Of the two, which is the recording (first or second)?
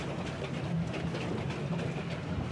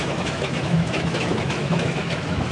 first